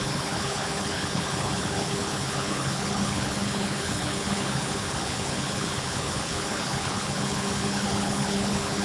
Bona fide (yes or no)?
no